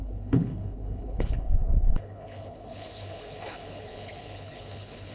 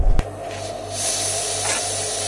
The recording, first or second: second